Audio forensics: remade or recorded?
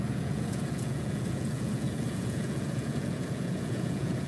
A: remade